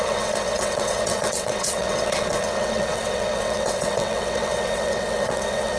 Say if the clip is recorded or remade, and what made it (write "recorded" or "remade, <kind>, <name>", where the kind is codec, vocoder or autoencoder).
remade, vocoder, WaveNeXt